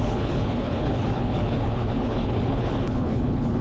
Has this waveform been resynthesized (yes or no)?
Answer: yes